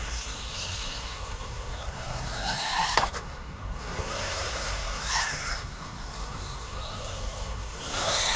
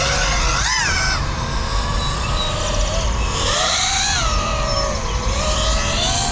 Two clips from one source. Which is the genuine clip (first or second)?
second